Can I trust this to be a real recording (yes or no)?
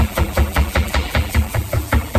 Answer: no